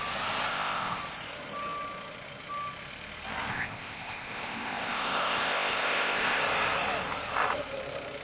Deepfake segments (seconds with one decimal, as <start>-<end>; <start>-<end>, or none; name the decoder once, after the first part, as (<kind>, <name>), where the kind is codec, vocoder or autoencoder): 0.5-1.0 (codec, ZipCodec); 3.5-6.4